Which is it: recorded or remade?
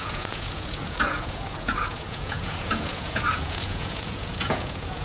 remade